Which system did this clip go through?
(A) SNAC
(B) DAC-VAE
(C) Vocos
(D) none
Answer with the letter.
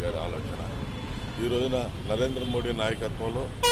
D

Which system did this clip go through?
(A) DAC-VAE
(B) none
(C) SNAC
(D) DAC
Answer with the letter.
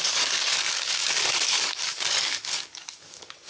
D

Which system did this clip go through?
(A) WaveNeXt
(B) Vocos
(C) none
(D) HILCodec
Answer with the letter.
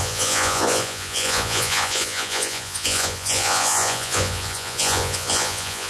B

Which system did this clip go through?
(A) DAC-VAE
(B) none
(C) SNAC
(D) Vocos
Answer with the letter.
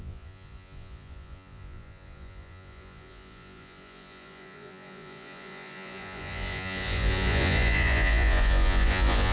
D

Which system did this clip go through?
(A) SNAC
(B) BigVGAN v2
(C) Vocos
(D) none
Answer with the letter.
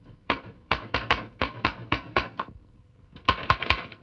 A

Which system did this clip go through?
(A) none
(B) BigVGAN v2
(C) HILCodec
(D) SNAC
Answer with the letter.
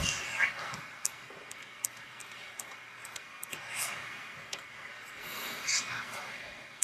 D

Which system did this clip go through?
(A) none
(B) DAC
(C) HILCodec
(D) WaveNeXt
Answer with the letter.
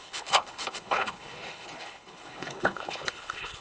C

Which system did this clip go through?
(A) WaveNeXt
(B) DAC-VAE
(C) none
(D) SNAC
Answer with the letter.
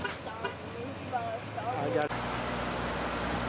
C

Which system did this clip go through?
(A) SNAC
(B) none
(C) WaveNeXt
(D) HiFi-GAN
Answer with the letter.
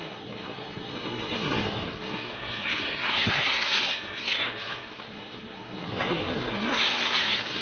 A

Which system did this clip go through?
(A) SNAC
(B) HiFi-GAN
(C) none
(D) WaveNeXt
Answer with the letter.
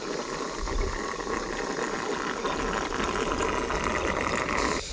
C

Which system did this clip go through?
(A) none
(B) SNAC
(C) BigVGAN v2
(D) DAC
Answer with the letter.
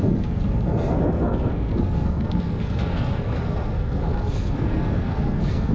B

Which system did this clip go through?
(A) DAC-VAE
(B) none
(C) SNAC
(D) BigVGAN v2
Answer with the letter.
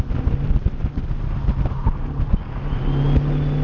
B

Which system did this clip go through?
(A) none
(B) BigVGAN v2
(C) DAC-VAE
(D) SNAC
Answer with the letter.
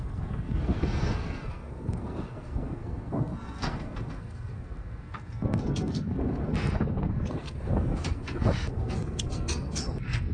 D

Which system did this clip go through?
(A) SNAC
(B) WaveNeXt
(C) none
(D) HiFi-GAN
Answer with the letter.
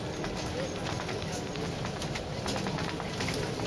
C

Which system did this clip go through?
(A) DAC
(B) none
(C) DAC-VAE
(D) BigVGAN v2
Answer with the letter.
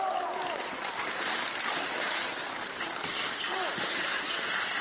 D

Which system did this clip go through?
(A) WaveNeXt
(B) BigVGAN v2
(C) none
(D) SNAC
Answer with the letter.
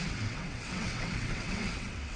A